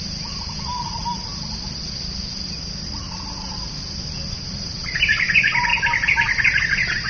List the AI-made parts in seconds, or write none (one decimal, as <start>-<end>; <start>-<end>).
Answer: 0.0-1.3; 4.3-5.7; 6.6-7.1